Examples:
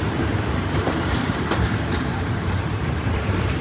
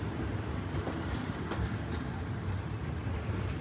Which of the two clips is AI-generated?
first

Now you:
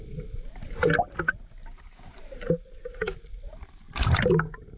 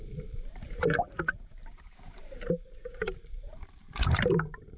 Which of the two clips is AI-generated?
second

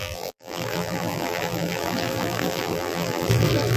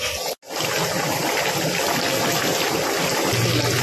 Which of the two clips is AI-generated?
first